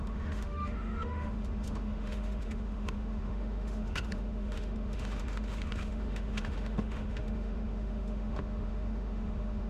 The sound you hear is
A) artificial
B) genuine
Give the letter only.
A